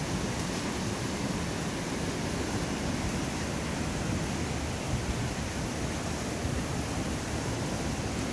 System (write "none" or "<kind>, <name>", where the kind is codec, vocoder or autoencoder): none